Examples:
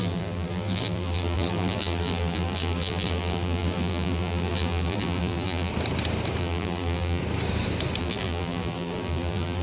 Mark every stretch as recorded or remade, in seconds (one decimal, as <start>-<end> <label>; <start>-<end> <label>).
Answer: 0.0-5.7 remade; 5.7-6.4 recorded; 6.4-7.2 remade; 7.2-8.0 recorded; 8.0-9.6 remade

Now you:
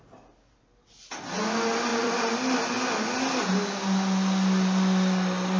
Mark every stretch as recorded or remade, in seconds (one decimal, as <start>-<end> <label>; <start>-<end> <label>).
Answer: 0.0-1.9 recorded; 1.9-2.6 remade; 2.6-5.6 recorded

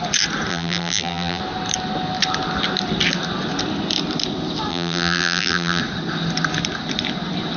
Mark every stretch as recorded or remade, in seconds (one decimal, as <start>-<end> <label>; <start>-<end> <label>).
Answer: 0.0-0.5 recorded; 0.5-1.4 remade; 1.4-4.7 recorded; 4.7-5.8 remade; 5.8-7.6 recorded

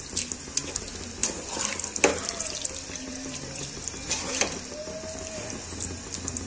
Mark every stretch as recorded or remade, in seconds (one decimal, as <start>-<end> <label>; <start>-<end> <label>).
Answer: 0.0-1.2 recorded; 1.2-4.3 remade; 4.3-6.5 recorded